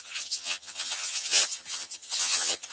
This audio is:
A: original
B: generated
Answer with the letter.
B